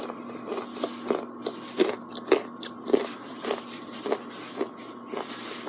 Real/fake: real